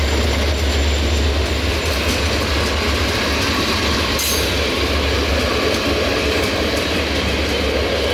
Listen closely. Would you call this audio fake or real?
real